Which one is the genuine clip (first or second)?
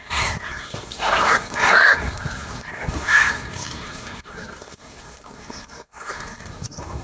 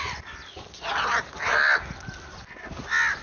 second